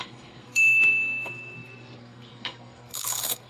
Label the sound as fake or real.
fake